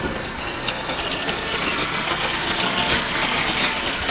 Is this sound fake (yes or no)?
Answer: yes